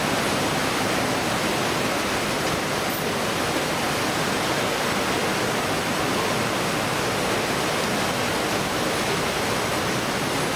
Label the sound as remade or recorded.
recorded